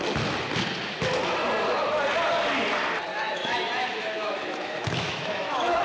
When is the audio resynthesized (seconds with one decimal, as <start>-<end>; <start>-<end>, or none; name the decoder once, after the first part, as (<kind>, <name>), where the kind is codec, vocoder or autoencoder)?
3.1-5.8 (autoencoder, DAC-VAE)